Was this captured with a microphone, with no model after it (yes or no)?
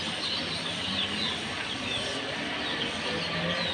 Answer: no